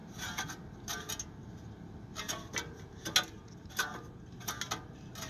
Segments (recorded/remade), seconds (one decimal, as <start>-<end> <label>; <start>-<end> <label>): 0.0-5.3 recorded